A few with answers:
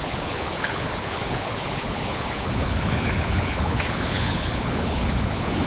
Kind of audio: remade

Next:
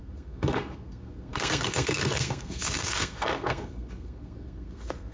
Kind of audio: remade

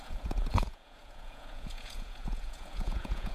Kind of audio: remade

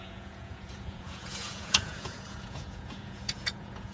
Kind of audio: remade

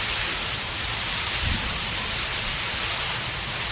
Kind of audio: recorded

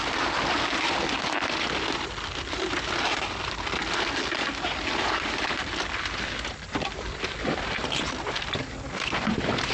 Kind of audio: remade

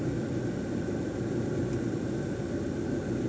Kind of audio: recorded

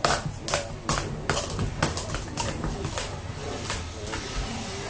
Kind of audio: recorded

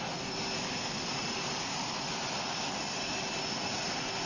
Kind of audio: recorded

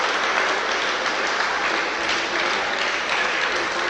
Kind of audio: remade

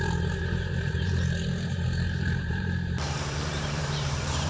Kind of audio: remade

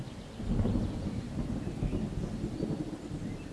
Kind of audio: recorded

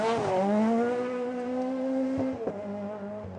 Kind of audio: recorded